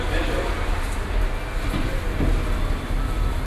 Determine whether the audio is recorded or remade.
recorded